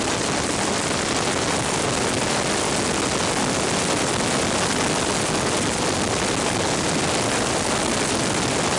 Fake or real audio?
real